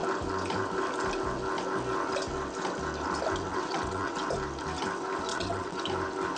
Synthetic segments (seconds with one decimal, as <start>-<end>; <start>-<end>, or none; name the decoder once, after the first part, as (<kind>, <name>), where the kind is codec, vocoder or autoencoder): 3.5-4.1 (vocoder, WaveNeXt); 5.3-5.8